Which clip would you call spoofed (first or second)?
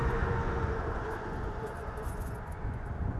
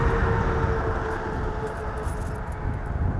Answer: first